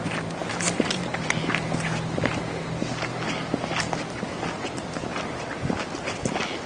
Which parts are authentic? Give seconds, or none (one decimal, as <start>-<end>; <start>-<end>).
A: 0.0-6.7